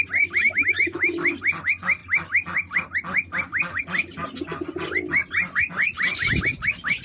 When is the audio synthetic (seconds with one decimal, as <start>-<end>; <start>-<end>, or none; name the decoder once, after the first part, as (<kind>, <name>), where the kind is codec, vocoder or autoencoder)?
0.4-1.3 (autoencoder, DAC-VAE)